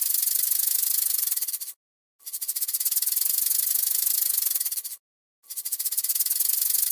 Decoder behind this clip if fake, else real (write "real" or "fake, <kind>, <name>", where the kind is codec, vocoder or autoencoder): real